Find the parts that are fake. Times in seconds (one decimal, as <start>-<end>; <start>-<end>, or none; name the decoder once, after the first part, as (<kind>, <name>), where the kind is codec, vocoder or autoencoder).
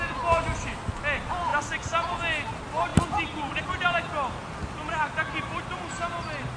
none